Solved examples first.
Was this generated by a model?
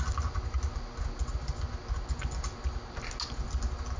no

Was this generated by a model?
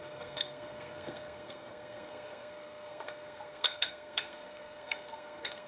yes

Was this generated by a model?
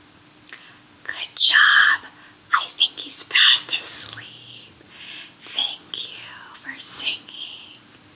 no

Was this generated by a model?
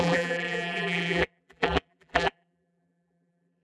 yes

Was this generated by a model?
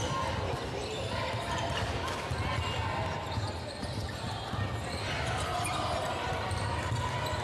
no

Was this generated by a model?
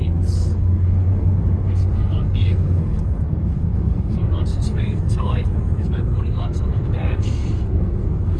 yes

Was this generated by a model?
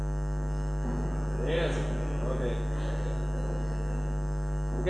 no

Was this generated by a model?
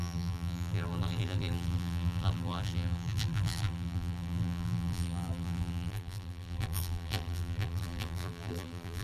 yes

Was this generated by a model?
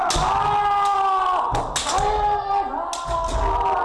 no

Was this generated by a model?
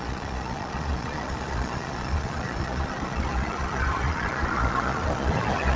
yes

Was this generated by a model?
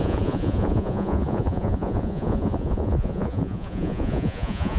yes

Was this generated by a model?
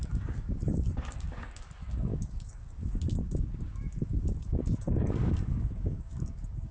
yes